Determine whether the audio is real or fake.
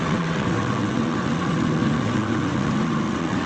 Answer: fake